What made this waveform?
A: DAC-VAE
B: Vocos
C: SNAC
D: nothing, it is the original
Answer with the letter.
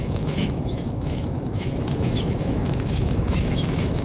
A